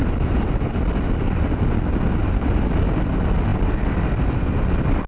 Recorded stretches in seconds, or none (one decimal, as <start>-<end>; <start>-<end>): 0.0-5.1